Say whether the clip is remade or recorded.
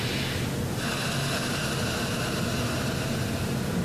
recorded